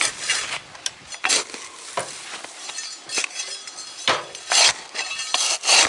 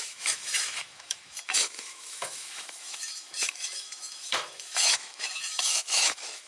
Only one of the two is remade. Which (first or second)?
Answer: second